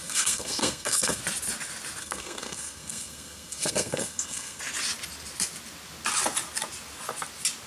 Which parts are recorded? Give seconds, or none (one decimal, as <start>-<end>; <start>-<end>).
1.2-2.0; 4.6-7.7